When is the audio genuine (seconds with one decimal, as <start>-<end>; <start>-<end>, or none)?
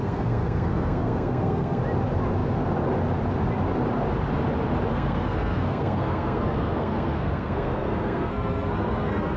1.8-4.9